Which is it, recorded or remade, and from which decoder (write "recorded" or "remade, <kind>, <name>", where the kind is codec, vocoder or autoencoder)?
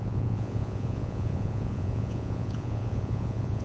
remade, vocoder, Vocos